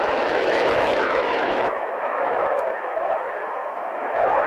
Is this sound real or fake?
fake